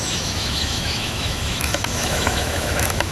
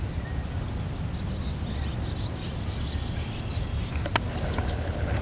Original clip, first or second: second